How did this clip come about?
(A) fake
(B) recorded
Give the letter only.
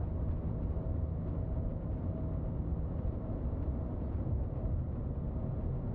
B